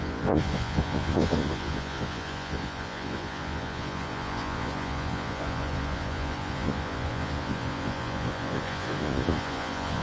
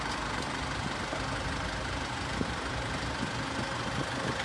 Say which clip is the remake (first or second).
first